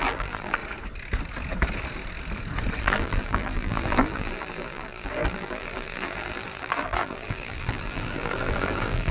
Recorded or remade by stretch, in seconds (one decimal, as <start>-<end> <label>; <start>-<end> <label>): 0.0-0.6 remade; 0.6-2.8 recorded; 2.8-9.1 remade